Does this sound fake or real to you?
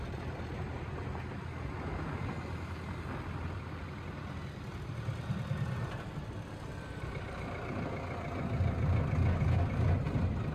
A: real